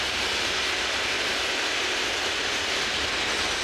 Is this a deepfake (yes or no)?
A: no